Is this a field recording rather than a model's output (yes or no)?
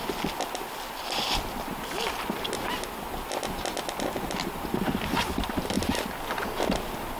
yes